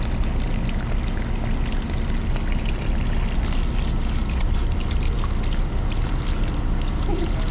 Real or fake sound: real